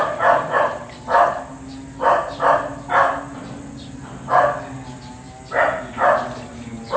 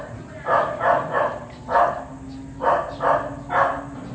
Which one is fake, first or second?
first